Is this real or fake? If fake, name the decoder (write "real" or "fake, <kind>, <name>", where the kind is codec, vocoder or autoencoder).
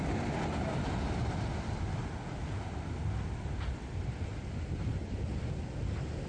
real